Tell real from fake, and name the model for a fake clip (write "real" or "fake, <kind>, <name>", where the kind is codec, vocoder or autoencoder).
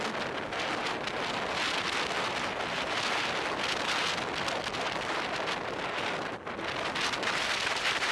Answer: real